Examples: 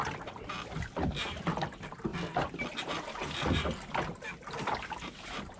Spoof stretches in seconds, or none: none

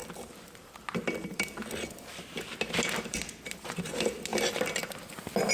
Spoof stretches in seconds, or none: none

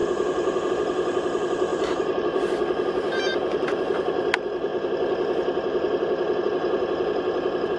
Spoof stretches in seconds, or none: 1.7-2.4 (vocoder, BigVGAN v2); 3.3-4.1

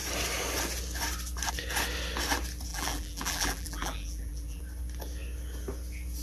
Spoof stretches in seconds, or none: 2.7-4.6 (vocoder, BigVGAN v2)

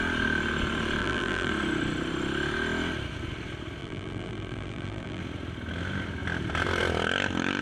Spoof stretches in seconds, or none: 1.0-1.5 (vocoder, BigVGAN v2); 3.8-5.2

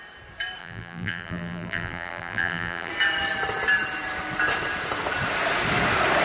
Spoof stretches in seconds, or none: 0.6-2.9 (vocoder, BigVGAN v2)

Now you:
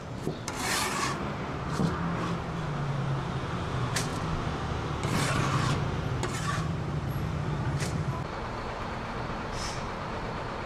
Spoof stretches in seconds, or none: 0.0-1.8 (vocoder, BigVGAN v2); 3.6-4.1; 6.4-10.7

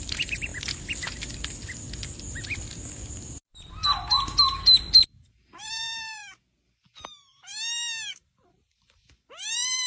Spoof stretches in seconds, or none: 0.0-0.5 (vocoder, BigVGAN v2); 3.1-3.8; 5.0-6.2; 8.1-9.9